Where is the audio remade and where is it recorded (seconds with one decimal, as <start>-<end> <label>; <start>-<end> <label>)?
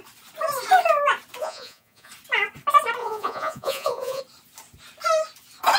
0.0-1.4 recorded; 1.4-2.1 remade; 2.1-3.0 recorded; 3.0-4.2 remade; 4.2-5.8 recorded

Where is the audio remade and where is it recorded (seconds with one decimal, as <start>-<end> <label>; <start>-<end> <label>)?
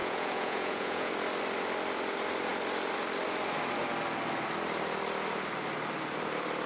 0.0-1.1 remade; 1.1-6.7 recorded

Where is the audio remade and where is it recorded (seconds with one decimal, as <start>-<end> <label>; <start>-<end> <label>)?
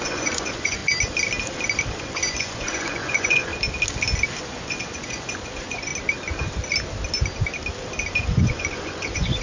0.0-0.8 remade; 0.8-2.0 recorded; 2.0-3.5 remade; 3.5-4.4 recorded; 4.4-5.9 remade; 5.9-8.1 recorded; 8.1-9.4 remade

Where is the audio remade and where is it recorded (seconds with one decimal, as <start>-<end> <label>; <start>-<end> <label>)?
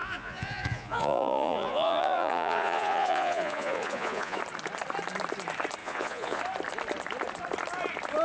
0.0-4.4 remade; 4.4-5.8 recorded; 5.8-6.4 remade; 6.4-8.2 recorded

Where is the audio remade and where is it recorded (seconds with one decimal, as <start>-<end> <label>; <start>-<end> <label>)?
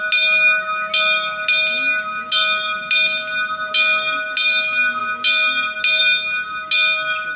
0.0-7.4 recorded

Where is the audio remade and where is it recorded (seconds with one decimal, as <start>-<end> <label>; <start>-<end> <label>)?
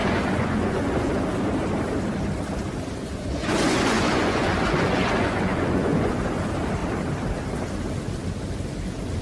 0.0-1.1 remade; 1.1-3.0 recorded; 3.0-6.2 remade; 6.2-9.2 recorded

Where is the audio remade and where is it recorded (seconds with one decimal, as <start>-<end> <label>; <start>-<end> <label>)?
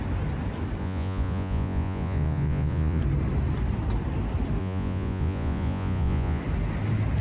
0.0-0.8 recorded; 0.8-3.0 remade; 3.0-4.6 recorded; 4.6-6.4 remade; 6.4-7.2 recorded